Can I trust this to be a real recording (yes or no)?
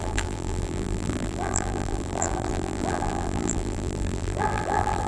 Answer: no